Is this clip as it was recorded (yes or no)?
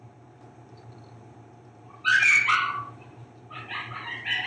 yes